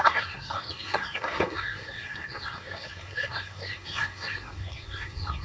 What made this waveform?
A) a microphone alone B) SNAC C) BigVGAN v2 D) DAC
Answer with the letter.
B